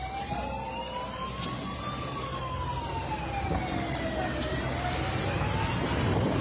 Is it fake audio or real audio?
real